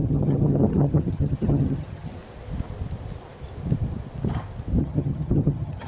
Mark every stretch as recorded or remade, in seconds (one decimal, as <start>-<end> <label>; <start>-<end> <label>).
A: 0.0-2.2 remade; 2.2-4.8 recorded; 4.8-5.9 remade